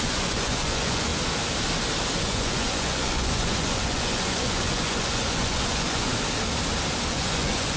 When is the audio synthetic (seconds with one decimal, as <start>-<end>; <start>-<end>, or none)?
0.0-1.1; 2.2-6.1; 7.1-7.8